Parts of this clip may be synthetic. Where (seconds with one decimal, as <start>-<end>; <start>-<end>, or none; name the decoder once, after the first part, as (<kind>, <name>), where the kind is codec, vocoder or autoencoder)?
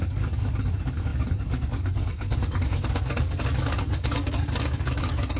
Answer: 0.0-5.4 (codec, DAC)